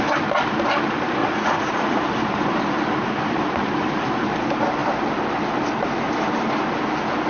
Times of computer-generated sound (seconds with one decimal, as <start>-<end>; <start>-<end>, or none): 1.2-2.0